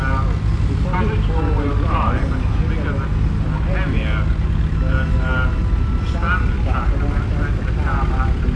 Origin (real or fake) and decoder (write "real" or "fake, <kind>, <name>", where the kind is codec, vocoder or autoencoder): real